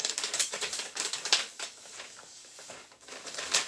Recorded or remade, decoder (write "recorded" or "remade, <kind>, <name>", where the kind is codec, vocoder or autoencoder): remade, codec, DAC